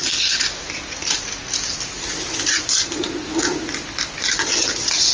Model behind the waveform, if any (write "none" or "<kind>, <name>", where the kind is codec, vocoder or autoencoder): none